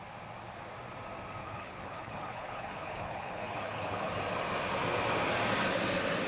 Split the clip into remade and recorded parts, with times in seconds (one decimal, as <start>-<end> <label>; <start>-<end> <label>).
0.0-1.4 recorded; 1.4-4.1 remade; 4.1-6.3 recorded